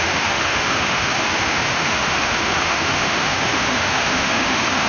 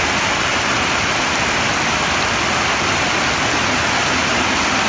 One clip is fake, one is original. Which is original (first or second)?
second